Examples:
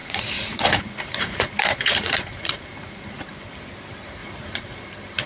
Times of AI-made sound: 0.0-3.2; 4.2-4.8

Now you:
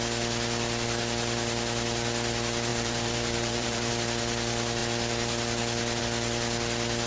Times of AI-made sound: 2.7-3.9